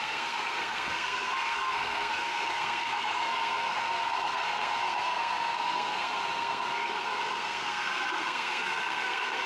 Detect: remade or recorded remade